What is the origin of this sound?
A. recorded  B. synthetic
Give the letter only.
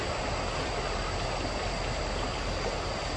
A